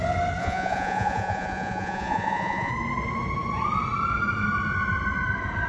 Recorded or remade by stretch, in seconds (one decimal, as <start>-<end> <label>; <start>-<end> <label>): 0.0-0.4 recorded; 0.4-2.7 remade; 2.7-5.7 recorded